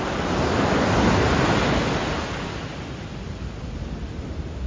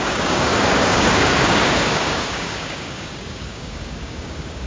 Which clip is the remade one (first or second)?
second